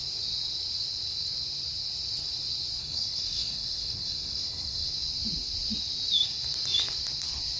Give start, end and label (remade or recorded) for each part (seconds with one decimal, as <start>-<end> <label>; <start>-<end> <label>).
0.0-2.8 recorded; 2.8-4.9 remade; 4.9-7.6 recorded